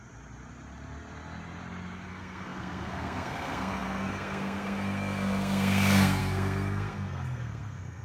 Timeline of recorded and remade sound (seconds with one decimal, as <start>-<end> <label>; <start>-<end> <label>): 0.0-2.1 recorded; 2.1-8.0 remade